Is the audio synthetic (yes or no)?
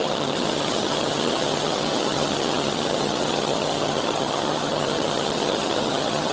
yes